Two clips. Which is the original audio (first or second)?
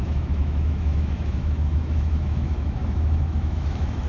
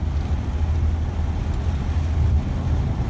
second